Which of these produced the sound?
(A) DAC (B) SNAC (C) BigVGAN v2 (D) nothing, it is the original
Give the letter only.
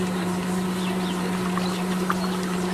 D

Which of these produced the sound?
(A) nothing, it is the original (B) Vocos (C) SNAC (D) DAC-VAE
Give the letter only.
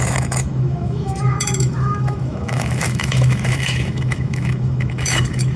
D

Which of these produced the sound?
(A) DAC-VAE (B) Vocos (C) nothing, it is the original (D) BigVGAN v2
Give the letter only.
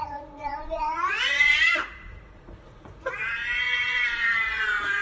B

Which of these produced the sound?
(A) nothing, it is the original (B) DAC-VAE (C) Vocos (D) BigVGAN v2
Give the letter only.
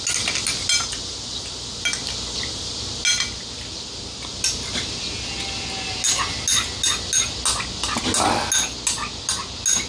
A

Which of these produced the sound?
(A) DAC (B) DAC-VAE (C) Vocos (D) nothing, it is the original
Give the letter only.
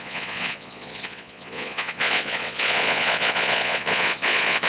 C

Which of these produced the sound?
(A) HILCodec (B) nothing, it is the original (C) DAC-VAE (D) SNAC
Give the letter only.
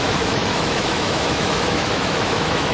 C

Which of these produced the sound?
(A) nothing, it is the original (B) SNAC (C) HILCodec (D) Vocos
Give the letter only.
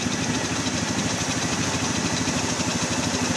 A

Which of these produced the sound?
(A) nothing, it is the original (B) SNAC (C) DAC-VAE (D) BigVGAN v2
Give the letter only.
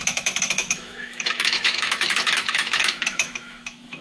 C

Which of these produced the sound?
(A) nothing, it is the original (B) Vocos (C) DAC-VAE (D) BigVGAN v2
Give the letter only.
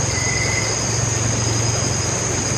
A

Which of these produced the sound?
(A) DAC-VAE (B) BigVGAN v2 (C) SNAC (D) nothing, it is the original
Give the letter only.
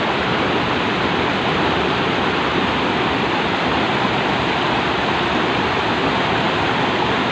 B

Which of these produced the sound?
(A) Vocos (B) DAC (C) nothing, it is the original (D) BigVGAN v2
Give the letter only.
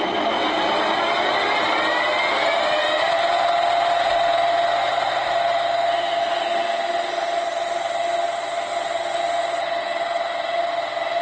C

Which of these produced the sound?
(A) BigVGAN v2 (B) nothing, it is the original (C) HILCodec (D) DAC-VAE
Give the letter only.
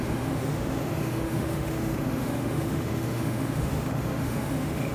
D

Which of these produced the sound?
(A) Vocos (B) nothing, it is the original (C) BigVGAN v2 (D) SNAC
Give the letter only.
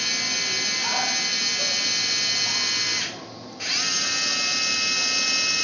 B